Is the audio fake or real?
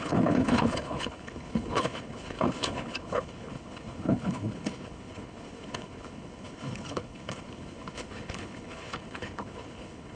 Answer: fake